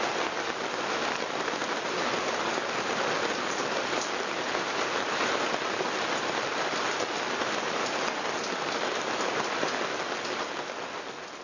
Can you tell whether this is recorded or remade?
recorded